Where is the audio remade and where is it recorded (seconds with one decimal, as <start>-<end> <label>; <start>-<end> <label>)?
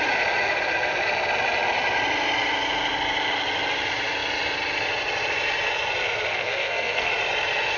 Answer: 0.0-6.3 recorded; 6.3-7.1 remade; 7.1-7.8 recorded